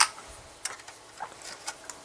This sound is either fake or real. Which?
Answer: real